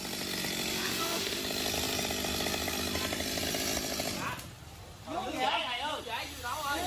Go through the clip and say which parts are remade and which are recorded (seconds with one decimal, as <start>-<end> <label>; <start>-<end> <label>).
0.0-0.7 recorded; 0.7-1.4 remade; 1.4-6.9 recorded